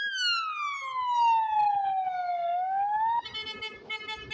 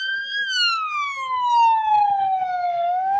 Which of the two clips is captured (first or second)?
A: first